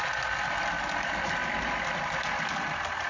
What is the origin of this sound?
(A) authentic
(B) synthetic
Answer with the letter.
A